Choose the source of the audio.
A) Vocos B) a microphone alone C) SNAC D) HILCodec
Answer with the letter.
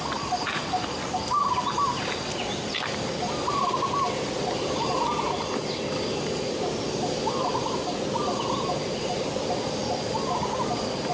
B